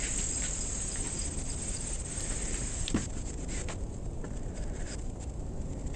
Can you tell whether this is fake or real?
fake